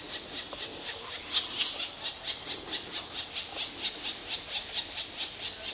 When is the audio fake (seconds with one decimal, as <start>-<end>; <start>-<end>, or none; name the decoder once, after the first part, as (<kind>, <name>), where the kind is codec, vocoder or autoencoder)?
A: none